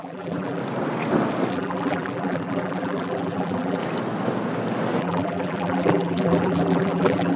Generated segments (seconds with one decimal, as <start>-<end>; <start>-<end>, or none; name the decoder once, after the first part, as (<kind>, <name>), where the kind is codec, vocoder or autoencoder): 0.0-0.6 (vocoder, BigVGAN v2); 1.5-3.8; 5.0-7.4